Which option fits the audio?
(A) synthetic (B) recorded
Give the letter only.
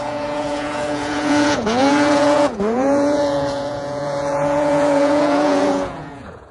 A